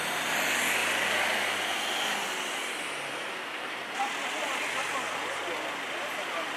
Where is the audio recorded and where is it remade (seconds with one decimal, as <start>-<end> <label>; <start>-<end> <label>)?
0.0-6.6 recorded